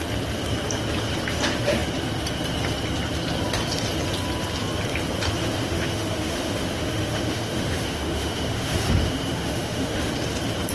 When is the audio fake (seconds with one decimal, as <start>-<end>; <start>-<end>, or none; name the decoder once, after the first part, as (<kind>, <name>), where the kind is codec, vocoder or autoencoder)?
5.4-10.1 (autoencoder, DAC-VAE)